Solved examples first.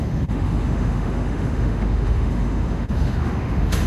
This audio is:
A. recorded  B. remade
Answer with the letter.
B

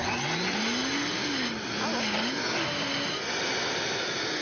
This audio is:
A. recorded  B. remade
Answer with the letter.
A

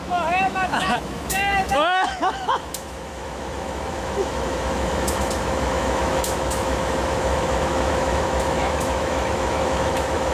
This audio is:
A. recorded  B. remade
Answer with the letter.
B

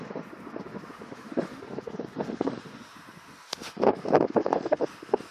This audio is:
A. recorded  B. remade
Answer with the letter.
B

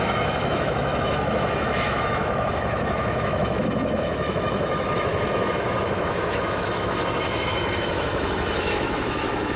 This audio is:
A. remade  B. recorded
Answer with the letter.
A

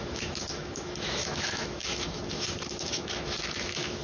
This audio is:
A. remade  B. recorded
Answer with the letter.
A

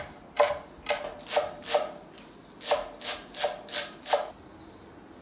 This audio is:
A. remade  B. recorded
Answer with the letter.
B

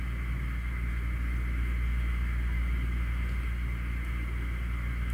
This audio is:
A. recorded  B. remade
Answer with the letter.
A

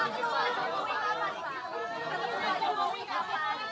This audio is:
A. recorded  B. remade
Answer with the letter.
A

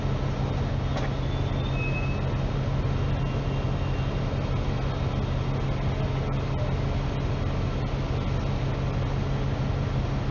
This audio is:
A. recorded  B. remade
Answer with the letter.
A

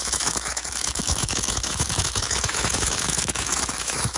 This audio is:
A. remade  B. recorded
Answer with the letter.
A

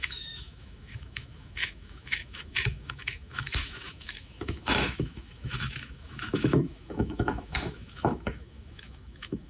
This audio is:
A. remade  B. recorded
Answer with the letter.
A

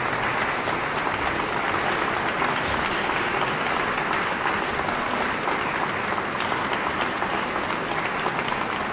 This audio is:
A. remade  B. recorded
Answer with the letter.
B